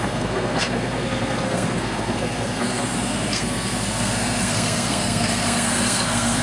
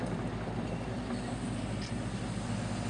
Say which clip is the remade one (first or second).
first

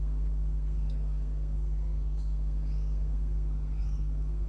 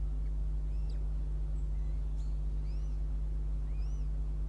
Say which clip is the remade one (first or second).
first